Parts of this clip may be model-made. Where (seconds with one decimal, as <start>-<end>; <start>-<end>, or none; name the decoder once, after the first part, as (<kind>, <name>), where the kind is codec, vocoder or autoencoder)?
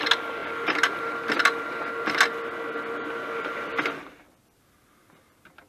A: none